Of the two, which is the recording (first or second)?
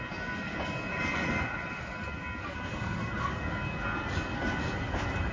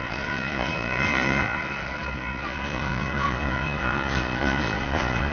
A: first